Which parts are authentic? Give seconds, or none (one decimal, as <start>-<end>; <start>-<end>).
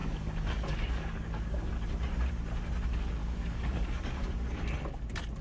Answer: 1.7-3.2; 4.3-5.4